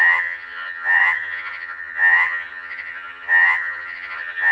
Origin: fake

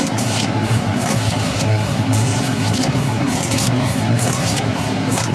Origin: fake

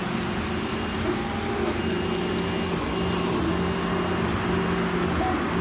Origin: real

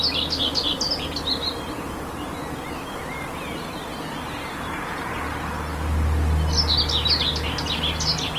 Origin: real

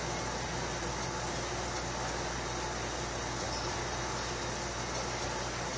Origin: real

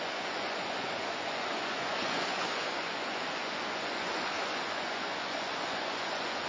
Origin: fake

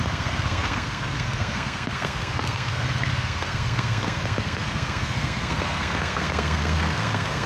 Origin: fake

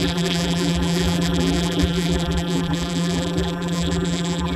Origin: fake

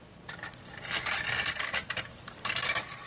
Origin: fake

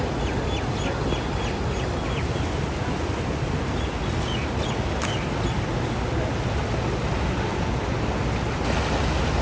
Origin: real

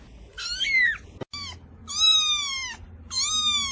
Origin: real